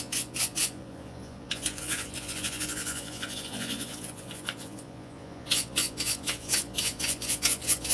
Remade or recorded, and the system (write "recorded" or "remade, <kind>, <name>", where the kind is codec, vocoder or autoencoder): remade, vocoder, Vocos